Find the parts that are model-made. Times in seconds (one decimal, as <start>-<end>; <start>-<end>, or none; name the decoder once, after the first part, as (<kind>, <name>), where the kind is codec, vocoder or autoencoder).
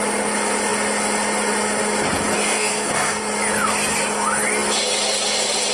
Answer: 2.4-3.2 (codec, SNAC)